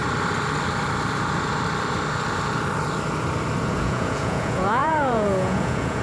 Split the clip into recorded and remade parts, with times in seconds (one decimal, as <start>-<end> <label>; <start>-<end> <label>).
0.0-3.6 recorded; 3.6-6.0 remade